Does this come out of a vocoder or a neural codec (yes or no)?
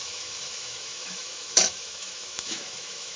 yes